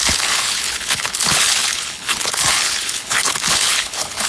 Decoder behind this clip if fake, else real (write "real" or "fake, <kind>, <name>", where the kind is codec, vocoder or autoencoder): fake, codec, HILCodec